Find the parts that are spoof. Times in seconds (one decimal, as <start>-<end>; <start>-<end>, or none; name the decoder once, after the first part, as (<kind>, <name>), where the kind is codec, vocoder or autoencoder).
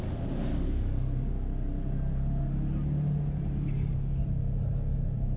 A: 0.5-1.3 (codec, DAC)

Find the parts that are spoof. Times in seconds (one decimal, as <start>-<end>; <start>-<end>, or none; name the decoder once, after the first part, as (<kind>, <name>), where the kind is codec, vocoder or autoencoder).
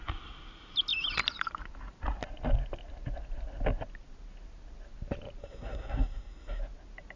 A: 5.4-6.6 (codec, SNAC)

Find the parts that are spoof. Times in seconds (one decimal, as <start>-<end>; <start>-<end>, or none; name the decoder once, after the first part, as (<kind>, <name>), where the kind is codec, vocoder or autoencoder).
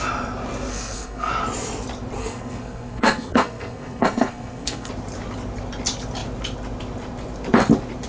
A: 0.7-1.3 (codec, SNAC); 2.2-4.9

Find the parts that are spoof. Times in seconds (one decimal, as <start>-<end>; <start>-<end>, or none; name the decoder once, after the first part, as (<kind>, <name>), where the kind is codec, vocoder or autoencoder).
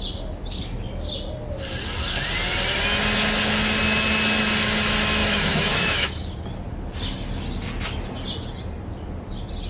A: 5.2-6.1 (autoencoder, DAC-VAE)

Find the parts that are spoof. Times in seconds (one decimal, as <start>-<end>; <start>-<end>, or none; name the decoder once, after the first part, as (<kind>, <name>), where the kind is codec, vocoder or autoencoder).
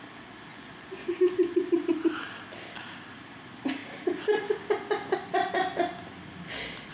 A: 0.5-1.9 (vocoder, Vocos)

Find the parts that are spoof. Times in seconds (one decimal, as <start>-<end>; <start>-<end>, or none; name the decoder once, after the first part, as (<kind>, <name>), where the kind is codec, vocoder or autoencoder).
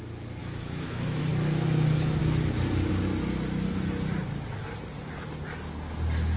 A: 0.4-1.2 (autoencoder, DAC-VAE)